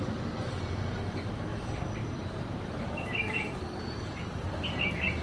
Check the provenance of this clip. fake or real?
fake